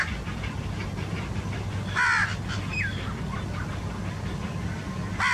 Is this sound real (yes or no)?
yes